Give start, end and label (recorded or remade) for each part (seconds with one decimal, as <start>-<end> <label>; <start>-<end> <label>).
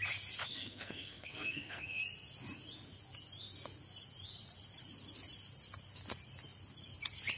0.0-0.5 recorded; 0.5-2.0 remade; 2.0-7.4 recorded